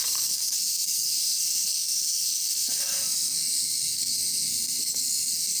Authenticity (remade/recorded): remade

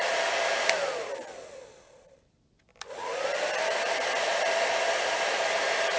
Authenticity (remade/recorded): remade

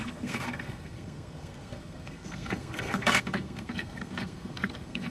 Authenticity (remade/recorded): remade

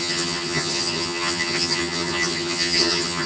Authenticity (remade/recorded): remade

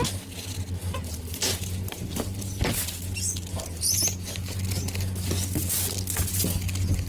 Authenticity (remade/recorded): recorded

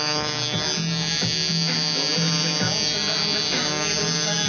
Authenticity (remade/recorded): recorded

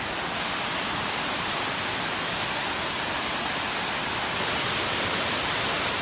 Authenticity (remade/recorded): remade